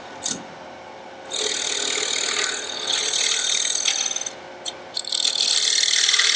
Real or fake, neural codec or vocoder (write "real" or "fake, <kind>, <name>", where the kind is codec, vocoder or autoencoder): real